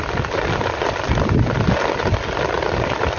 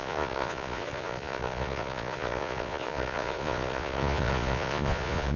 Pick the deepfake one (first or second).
second